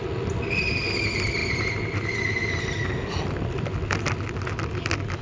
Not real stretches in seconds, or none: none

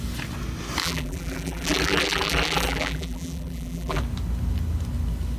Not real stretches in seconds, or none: 0.8-4.0 (vocoder, BigVGAN v2)